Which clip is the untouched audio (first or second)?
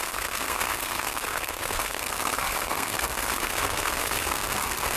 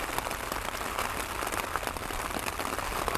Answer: second